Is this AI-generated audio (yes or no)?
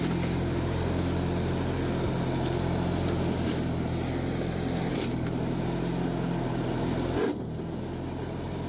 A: no